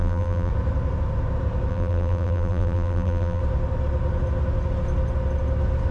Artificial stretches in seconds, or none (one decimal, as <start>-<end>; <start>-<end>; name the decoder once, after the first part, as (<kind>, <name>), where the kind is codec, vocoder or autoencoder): 0.0-0.5 (vocoder, BigVGAN v2); 1.7-3.4